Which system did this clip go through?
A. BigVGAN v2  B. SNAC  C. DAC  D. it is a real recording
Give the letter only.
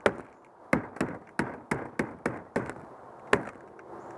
D